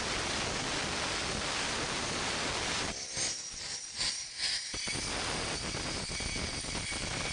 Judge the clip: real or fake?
real